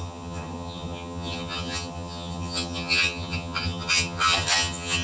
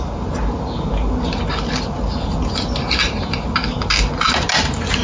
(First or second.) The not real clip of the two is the first